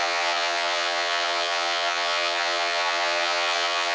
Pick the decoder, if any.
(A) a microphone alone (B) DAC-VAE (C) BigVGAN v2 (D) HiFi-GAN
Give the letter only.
D